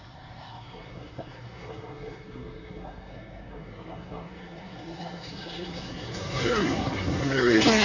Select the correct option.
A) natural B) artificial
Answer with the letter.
B